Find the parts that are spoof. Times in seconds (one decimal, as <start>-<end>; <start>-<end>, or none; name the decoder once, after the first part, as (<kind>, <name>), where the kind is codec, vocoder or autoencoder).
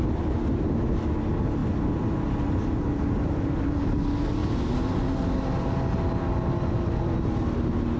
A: none